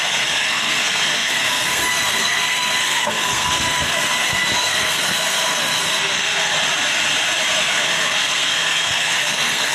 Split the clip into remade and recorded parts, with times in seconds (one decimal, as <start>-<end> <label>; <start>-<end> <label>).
0.0-6.5 remade; 6.5-7.6 recorded; 7.6-9.7 remade